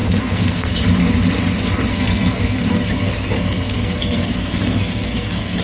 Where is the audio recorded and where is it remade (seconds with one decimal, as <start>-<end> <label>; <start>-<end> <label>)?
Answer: 0.0-0.8 remade; 0.8-1.9 recorded; 1.9-5.6 remade

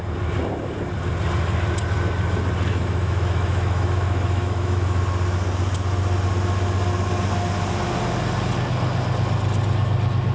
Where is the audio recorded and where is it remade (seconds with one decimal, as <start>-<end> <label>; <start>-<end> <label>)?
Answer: 0.0-2.7 recorded; 2.7-5.0 remade; 5.0-10.3 recorded

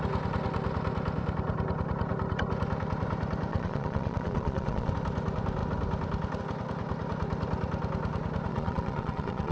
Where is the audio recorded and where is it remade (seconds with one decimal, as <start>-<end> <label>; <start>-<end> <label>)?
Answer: 0.0-3.5 recorded; 3.5-4.9 remade; 4.9-8.5 recorded; 8.5-9.5 remade